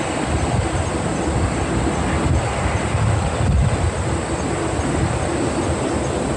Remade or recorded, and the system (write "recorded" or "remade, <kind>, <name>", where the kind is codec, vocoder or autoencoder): recorded